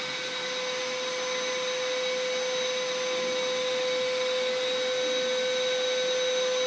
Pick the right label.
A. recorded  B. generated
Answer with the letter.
A